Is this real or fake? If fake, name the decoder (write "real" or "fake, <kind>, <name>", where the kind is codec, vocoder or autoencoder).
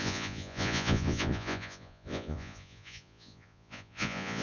fake, vocoder, Vocos